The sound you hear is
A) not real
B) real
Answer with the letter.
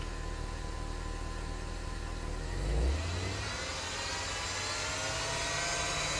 B